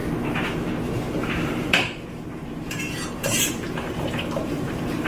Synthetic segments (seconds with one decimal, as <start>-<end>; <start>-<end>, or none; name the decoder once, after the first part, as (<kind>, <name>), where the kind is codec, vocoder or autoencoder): 1.3-5.1 (vocoder, BigVGAN v2)